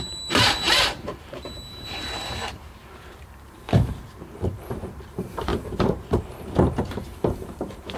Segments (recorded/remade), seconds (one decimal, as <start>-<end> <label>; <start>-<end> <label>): 0.0-8.0 remade